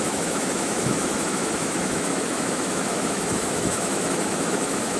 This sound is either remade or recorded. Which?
remade